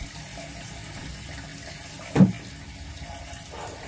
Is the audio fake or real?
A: real